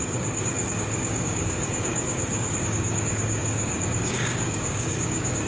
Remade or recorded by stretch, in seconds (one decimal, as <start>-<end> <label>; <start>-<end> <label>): 0.0-5.5 remade